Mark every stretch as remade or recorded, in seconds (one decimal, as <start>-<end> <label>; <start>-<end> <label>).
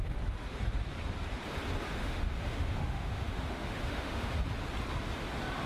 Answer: 0.0-2.0 recorded; 2.0-4.3 remade; 4.3-5.7 recorded